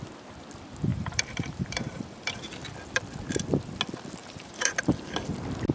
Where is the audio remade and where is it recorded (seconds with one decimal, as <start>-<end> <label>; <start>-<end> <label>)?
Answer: 0.0-0.9 recorded; 0.9-2.3 remade; 2.3-4.2 recorded; 4.2-4.8 remade; 4.8-5.7 recorded